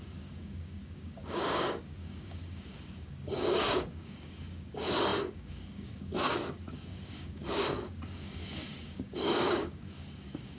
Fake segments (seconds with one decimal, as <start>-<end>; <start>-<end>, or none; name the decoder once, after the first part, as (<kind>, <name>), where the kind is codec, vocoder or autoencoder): 0.0-10.6 (codec, DAC)